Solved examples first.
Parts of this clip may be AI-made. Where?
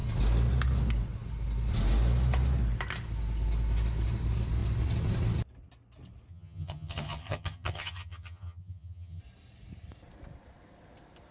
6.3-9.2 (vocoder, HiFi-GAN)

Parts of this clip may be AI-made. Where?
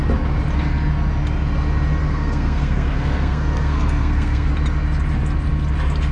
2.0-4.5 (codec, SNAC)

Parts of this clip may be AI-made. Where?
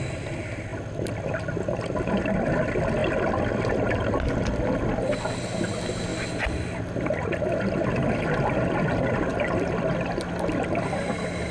none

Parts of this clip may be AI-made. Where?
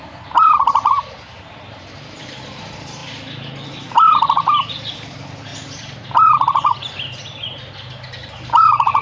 none